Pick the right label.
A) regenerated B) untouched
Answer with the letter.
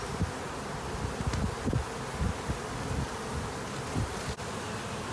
B